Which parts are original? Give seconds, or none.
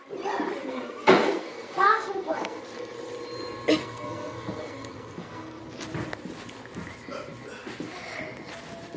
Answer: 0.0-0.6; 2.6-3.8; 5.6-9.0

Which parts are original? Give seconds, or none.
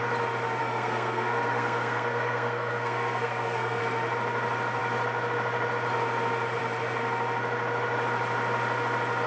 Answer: 0.0-0.6; 3.8-9.3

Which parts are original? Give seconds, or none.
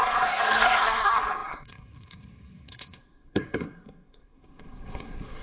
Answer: none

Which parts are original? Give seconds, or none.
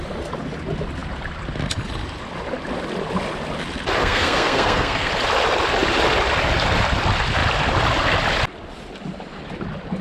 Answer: 0.0-4.0; 5.1-10.0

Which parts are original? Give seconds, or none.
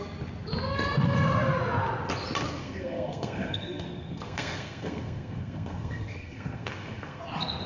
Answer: 0.0-2.6; 7.2-7.7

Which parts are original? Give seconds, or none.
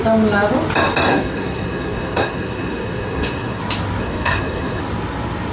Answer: 0.0-1.1; 3.6-4.0; 4.8-5.5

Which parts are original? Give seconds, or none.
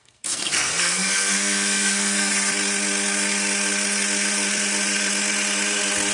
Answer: 2.3-6.1